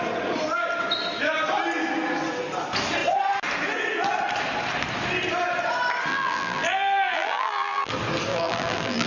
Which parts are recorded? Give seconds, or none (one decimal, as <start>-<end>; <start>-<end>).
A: 0.0-6.1; 7.9-8.3